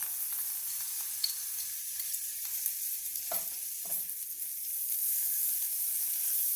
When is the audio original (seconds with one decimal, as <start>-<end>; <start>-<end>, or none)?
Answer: 0.0-6.6